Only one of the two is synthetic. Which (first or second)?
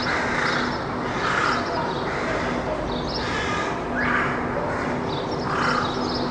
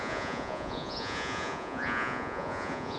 second